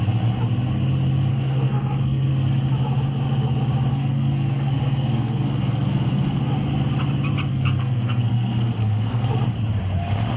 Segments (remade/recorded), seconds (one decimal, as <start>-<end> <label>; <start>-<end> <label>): 0.0-1.3 recorded; 1.3-2.3 remade; 2.3-3.9 recorded; 3.9-6.4 remade; 6.4-7.5 recorded; 7.5-9.3 remade; 9.3-10.4 recorded